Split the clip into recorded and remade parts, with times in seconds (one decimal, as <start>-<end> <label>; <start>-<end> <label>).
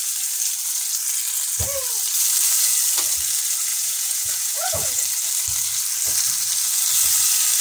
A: 0.0-3.7 recorded; 3.7-5.0 remade; 5.0-7.6 recorded